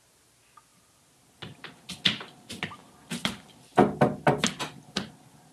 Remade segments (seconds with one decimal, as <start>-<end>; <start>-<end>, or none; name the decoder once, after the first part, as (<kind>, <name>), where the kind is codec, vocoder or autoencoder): 2.8-5.1 (vocoder, BigVGAN v2)